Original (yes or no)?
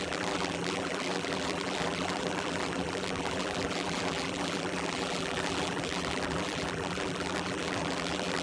no